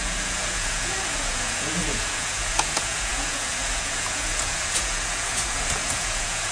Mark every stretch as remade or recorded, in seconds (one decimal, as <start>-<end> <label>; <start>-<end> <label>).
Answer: 0.0-6.5 remade